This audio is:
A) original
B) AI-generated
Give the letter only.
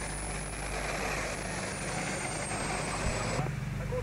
A